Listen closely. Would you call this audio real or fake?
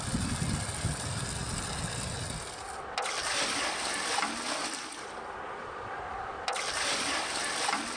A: real